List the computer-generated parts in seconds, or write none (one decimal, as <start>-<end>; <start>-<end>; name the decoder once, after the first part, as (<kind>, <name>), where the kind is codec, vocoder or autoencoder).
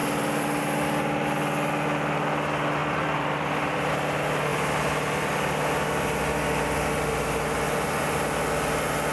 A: 0.0-0.6 (vocoder, BigVGAN v2); 2.8-3.9